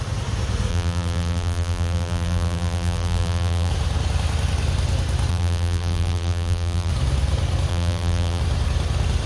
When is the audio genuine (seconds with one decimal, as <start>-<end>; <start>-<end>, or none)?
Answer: 0.0-0.7; 3.7-5.3; 6.9-7.7; 8.4-9.3